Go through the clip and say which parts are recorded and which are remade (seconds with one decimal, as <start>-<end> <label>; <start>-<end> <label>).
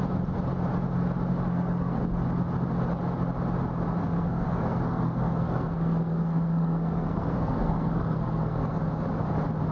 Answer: 0.0-1.5 recorded; 1.5-2.0 remade; 2.0-4.0 recorded; 4.0-8.8 remade; 8.8-9.7 recorded